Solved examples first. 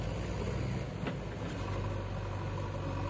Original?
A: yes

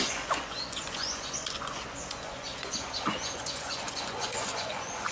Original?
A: no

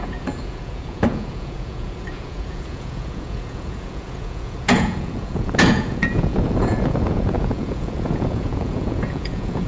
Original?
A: no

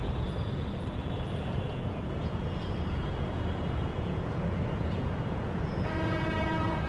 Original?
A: no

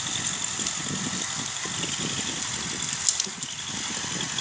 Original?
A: yes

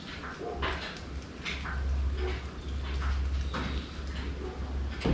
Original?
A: yes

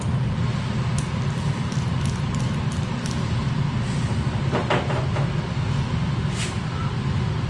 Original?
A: yes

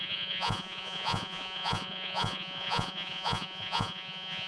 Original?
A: no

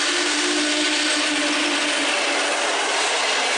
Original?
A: yes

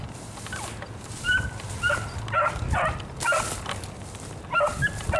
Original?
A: yes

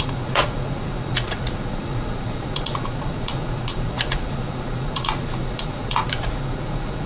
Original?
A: no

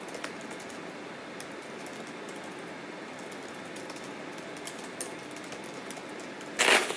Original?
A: yes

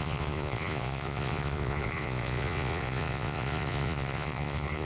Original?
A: no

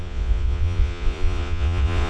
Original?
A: no